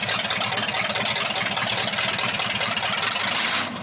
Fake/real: real